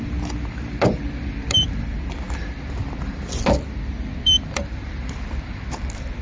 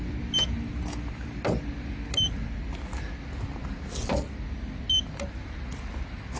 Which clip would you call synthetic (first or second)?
first